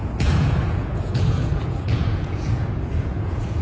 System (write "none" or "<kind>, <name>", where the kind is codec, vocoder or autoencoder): vocoder, Vocos